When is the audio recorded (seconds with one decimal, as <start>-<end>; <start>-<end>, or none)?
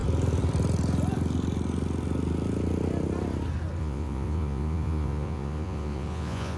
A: 0.0-3.8